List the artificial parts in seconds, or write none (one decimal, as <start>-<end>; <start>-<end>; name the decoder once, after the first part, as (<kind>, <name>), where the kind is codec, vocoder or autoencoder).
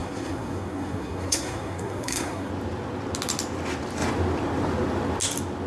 0.0-2.5 (codec, SNAC)